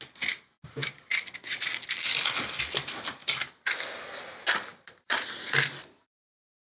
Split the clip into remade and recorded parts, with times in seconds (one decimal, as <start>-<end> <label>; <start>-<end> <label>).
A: 0.0-0.8 recorded; 0.8-1.6 remade; 1.6-3.2 recorded; 3.2-4.0 remade; 4.0-4.7 recorded; 4.7-6.3 remade; 6.3-6.7 recorded